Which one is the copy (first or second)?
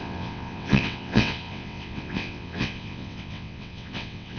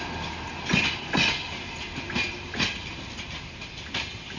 first